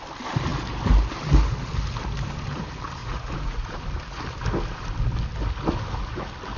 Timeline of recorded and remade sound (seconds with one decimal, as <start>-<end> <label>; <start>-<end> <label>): 0.0-3.0 recorded; 3.0-3.8 remade; 3.8-6.6 recorded